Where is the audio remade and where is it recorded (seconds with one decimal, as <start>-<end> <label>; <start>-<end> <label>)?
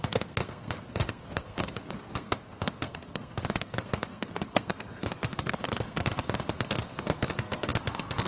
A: 0.0-8.3 remade